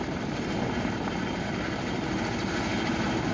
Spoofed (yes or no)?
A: no